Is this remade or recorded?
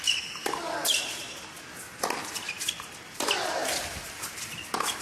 recorded